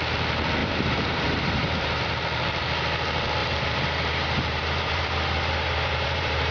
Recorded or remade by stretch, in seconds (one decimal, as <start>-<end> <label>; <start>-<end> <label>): 0.0-0.6 recorded; 0.6-2.0 remade; 2.0-3.4 recorded; 3.4-6.5 remade